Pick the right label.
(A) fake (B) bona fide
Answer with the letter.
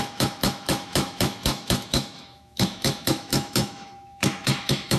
A